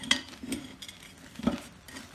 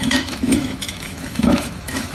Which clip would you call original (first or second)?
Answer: first